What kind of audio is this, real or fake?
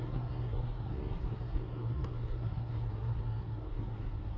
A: fake